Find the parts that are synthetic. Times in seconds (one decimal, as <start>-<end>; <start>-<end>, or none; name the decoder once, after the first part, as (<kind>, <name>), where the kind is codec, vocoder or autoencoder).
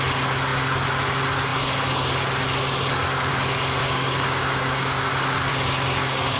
3.8-5.1 (codec, DAC); 5.5-6.4